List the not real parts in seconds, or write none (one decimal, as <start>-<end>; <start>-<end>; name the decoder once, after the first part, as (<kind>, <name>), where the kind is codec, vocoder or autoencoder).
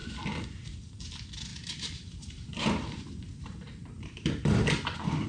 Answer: 0.0-1.0 (vocoder, BigVGAN v2); 1.5-4.7